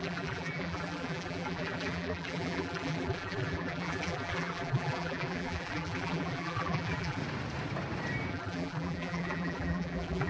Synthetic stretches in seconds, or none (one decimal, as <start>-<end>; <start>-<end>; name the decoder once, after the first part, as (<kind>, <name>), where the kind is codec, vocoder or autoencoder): 0.0-7.2 (vocoder, BigVGAN v2); 8.3-10.3